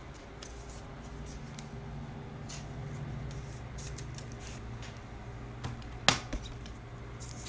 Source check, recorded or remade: recorded